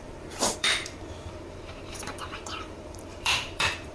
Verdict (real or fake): fake